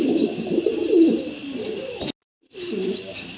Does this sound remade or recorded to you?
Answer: recorded